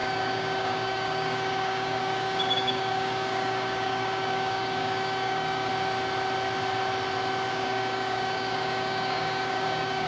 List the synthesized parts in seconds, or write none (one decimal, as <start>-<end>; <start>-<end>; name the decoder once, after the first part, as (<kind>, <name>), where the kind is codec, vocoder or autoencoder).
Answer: 0.0-5.7 (codec, DAC); 7.5-10.1